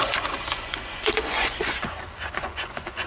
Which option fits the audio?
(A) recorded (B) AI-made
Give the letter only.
B